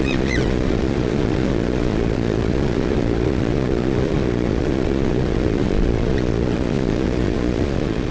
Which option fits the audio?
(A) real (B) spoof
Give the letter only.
B